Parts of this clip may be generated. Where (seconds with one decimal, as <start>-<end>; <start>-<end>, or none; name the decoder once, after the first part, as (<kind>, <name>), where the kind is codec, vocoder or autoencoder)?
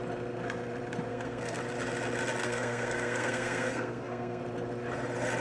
1.1-1.6 (codec, SNAC); 2.4-4.4